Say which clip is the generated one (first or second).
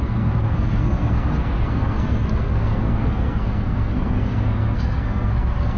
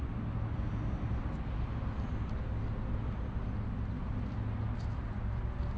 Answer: first